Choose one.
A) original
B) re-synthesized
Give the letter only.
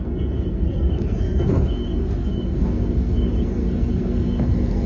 B